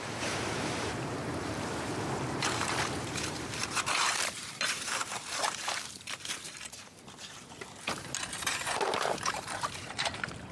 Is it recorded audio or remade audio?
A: remade